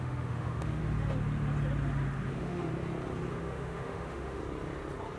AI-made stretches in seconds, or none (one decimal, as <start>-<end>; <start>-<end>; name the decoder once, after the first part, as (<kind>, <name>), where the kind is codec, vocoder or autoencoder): 0.0-0.8 (autoencoder, DAC-VAE); 2.3-2.7; 3.3-4.4